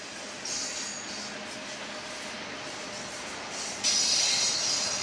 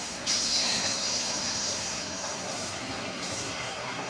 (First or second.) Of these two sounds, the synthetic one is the second